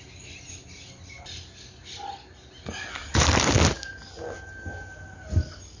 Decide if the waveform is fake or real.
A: real